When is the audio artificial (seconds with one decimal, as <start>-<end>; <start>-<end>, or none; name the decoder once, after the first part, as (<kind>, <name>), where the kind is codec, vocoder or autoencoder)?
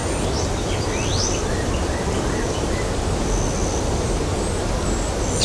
none